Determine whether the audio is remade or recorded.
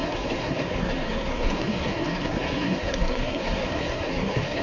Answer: remade